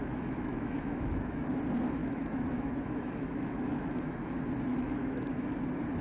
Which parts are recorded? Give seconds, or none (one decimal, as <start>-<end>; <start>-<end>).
1.5-2.0; 4.3-4.7; 5.6-6.0